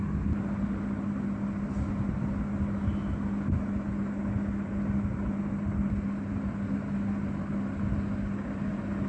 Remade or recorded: recorded